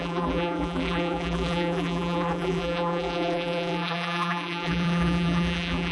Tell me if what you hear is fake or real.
fake